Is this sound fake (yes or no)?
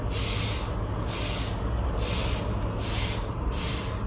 no